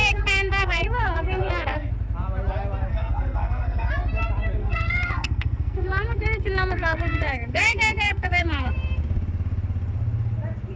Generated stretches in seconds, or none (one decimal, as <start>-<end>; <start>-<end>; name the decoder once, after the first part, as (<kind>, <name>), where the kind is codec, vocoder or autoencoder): 0.0-1.9 (codec, SNAC); 2.9-3.9; 4.6-8.7